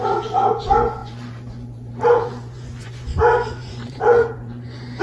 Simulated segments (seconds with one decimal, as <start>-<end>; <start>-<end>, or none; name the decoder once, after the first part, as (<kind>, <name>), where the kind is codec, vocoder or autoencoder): 0.0-5.0 (vocoder, Vocos)